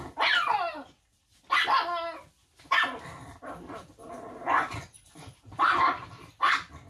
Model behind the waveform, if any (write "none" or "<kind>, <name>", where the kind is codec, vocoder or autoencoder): none